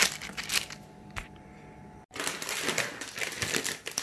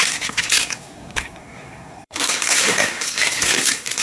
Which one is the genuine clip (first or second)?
first